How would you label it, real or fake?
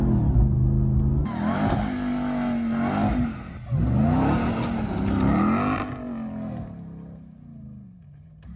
real